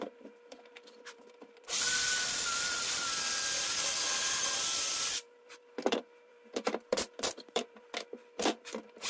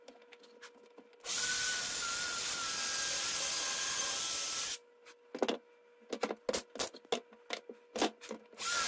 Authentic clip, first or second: second